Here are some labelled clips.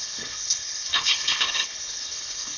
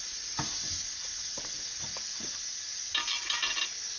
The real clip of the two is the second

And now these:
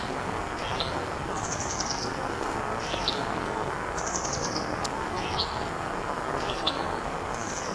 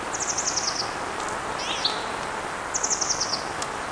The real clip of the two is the second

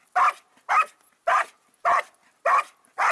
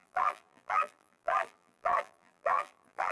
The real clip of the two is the first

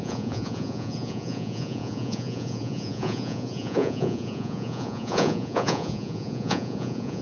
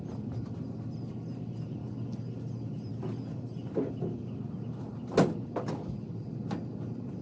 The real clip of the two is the second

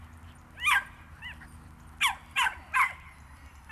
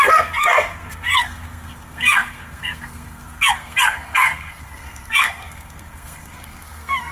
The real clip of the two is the first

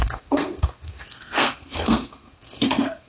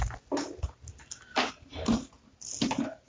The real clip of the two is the second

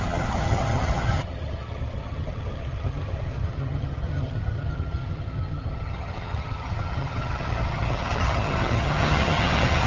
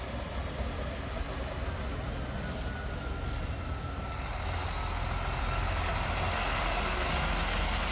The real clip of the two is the second